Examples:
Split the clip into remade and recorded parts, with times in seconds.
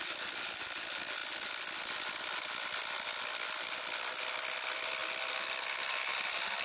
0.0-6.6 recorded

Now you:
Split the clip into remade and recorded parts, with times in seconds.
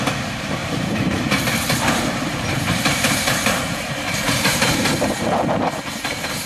0.0-0.6 recorded; 0.6-4.5 remade; 4.5-6.5 recorded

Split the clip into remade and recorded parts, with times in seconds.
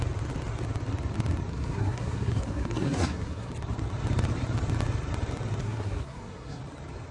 0.0-1.5 recorded; 1.5-3.5 remade; 3.5-5.6 recorded; 5.6-6.6 remade; 6.6-7.1 recorded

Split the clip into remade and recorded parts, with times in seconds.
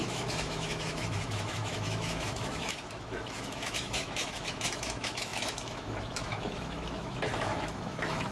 0.0-8.3 remade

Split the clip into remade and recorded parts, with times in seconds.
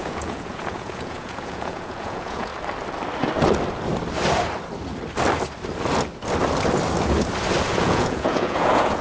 0.0-2.5 remade; 2.5-7.8 recorded; 7.8-9.0 remade